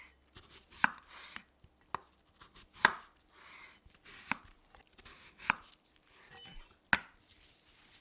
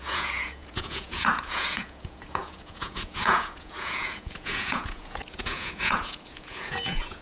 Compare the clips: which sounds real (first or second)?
first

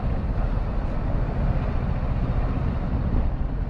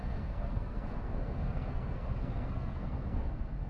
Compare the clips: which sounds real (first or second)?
first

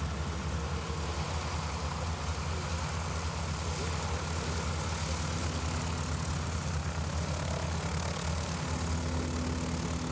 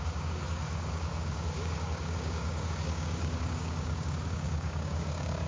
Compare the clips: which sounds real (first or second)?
first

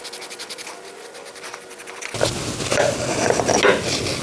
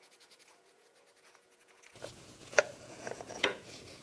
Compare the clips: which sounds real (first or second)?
first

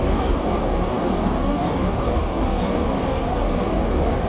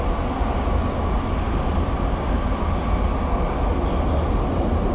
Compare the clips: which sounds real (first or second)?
second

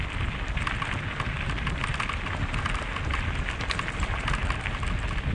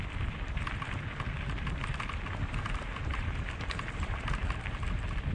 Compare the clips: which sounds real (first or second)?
first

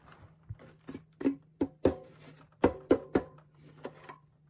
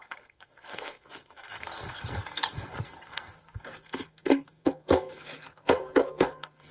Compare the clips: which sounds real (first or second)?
first